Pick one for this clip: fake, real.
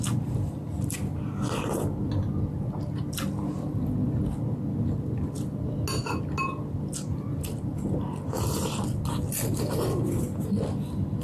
real